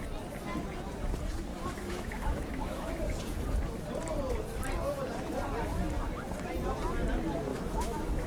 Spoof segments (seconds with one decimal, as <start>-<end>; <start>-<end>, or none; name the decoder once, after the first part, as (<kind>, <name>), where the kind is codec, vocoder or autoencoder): 1.5-2.9 (autoencoder, DAC-VAE); 7.5-8.3